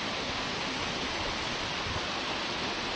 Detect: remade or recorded recorded